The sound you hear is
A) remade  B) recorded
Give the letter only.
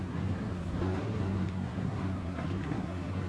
A